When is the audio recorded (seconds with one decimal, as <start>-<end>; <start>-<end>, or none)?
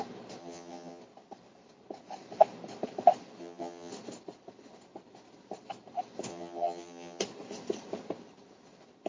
0.0-0.4; 1.0-3.4; 3.9-6.3; 7.2-9.1